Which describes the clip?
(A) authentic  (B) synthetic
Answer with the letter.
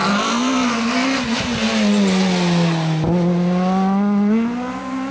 A